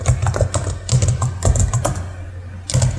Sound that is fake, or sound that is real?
real